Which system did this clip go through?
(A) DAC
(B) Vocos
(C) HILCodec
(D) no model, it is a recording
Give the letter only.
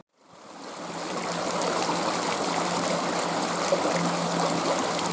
D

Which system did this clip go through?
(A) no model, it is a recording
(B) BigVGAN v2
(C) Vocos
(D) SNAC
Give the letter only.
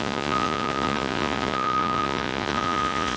C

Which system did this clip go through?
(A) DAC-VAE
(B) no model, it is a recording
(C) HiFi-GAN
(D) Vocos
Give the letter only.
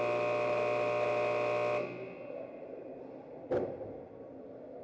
B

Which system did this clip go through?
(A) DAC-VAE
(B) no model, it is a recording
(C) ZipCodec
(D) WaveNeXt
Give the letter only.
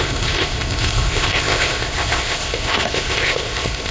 C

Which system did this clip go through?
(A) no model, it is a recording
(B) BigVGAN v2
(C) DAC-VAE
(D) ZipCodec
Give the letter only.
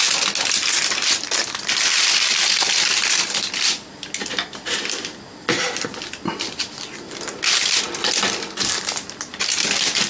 A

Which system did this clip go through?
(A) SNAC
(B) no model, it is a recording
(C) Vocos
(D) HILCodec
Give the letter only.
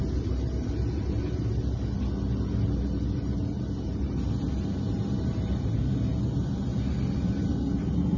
B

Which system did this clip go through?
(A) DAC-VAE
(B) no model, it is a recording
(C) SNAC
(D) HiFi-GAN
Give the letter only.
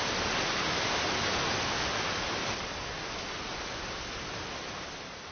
B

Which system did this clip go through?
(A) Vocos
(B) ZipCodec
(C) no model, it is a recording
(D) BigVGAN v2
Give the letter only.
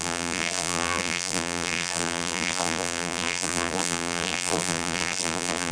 D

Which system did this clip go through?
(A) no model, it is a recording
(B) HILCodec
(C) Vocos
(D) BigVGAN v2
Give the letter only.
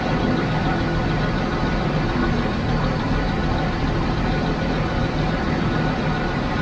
D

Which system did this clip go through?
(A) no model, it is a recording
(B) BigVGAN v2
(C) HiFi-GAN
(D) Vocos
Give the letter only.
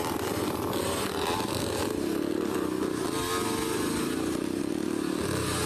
A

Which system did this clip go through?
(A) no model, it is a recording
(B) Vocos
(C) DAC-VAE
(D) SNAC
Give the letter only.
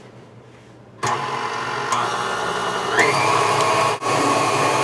A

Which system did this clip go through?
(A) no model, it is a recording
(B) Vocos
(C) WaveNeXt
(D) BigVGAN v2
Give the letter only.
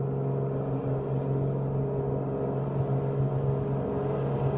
A